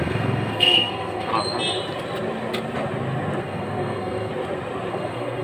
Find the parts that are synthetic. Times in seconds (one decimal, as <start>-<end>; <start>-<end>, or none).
0.0-1.3; 3.4-4.3; 4.9-5.4